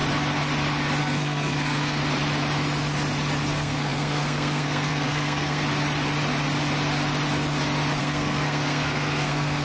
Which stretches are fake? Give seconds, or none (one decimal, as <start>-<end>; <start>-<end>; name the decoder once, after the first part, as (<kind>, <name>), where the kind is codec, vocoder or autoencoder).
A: 1.0-2.0 (codec, SNAC); 3.5-5.6; 8.0-9.6